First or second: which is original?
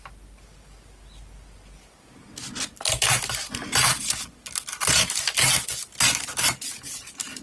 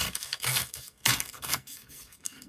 first